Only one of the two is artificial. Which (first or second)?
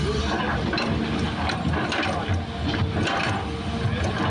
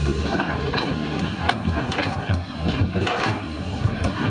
second